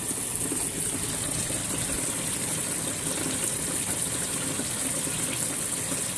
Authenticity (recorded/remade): recorded